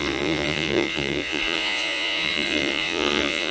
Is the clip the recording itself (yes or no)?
no